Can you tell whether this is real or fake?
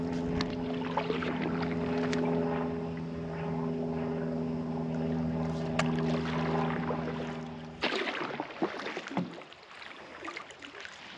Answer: real